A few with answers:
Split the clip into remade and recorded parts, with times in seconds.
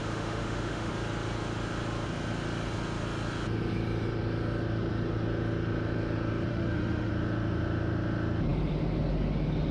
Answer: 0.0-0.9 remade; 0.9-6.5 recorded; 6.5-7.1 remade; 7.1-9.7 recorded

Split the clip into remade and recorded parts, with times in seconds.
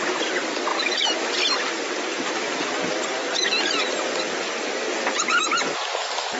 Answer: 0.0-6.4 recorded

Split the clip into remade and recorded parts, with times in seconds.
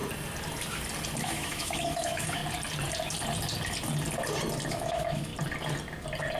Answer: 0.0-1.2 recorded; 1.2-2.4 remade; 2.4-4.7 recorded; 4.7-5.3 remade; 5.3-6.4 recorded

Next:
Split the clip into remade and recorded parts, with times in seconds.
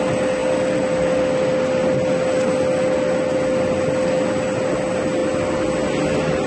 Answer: 0.0-6.5 recorded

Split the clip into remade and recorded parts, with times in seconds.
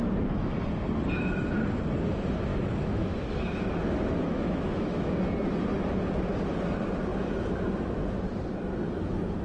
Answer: 0.0-2.5 recorded; 2.5-5.1 remade; 5.1-9.4 recorded